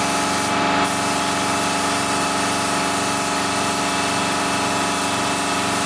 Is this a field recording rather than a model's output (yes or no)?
yes